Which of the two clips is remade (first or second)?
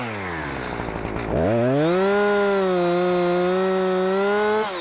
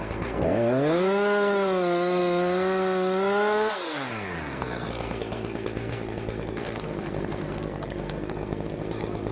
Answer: second